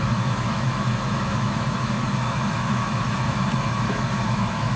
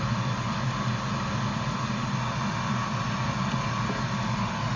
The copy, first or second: first